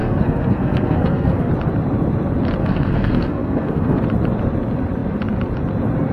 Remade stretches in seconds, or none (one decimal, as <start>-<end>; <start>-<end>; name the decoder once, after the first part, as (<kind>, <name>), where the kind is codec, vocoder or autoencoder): 0.0-1.5 (codec, SNAC); 2.6-4.0